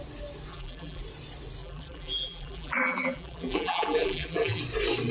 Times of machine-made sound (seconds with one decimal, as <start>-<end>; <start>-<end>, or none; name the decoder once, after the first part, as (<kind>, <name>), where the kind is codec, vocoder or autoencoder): 0.5-1.0 (vocoder, BigVGAN v2); 1.6-4.6